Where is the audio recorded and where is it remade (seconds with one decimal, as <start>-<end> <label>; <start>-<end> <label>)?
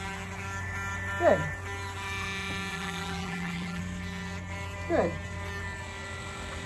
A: 0.0-2.7 recorded; 2.7-3.8 remade; 3.8-6.7 recorded